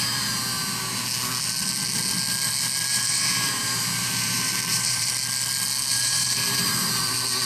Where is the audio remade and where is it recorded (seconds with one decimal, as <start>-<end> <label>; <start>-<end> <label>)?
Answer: 0.0-2.9 recorded; 2.9-5.1 remade; 5.1-5.9 recorded; 5.9-6.9 remade; 6.9-7.4 recorded